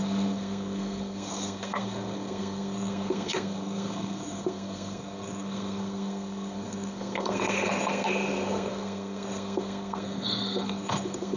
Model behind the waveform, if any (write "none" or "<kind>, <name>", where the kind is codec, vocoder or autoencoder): codec, SNAC